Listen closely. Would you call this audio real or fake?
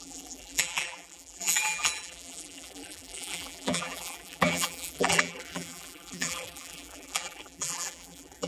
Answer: fake